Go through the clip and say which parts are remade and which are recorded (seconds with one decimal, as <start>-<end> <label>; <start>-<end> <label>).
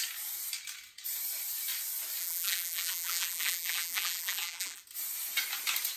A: 0.0-2.2 recorded; 2.2-4.8 remade; 4.8-6.0 recorded